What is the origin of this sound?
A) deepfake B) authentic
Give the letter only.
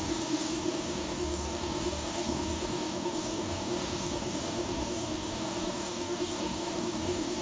A